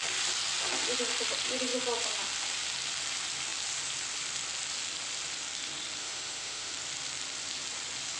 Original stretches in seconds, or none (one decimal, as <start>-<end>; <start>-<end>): 0.0-6.0; 6.7-8.2